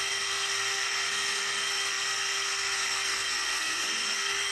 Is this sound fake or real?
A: fake